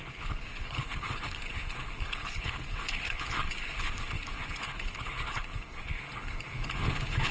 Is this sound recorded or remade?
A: remade